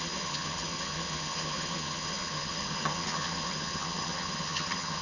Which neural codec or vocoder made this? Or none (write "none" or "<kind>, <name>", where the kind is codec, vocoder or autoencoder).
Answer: vocoder, HiFi-GAN